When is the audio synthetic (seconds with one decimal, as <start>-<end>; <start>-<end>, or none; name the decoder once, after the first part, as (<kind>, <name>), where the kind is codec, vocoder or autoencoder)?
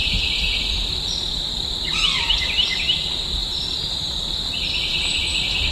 none